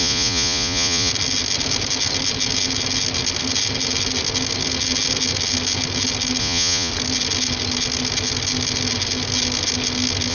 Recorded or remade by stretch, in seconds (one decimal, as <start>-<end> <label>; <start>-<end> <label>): 0.0-1.1 remade; 1.1-6.4 recorded; 6.4-6.9 remade; 6.9-10.3 recorded